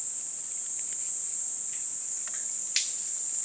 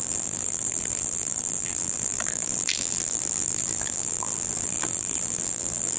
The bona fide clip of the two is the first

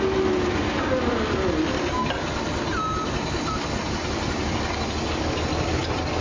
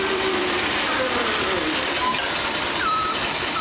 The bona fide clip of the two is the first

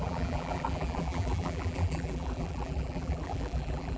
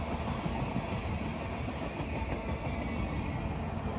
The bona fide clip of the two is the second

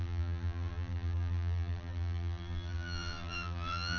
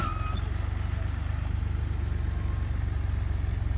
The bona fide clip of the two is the second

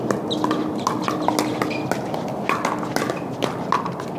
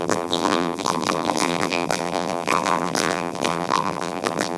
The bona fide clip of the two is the first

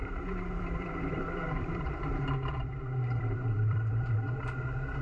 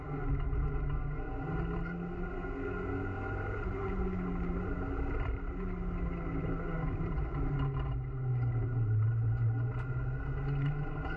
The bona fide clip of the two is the second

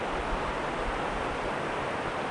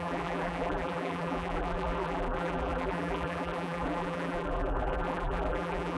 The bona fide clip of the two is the first